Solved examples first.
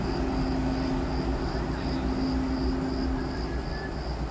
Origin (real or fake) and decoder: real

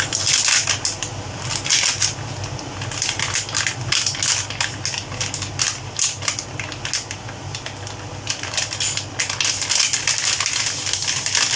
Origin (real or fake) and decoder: real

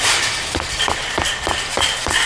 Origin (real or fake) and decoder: real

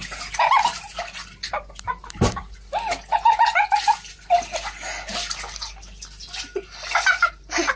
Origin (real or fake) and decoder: real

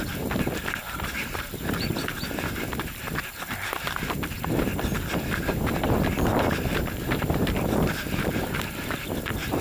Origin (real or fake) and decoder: fake, vocoder, BigVGAN v2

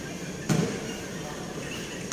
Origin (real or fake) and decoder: real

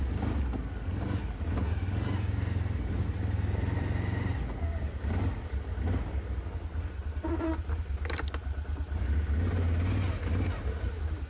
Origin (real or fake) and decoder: real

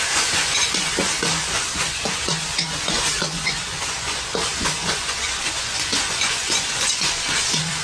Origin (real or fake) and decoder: fake, vocoder, Vocos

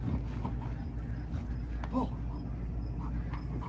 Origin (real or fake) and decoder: real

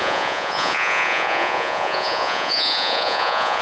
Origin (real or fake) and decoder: fake, vocoder, Vocos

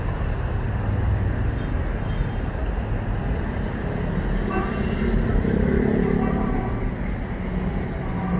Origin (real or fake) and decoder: real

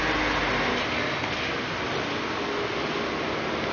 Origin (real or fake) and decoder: real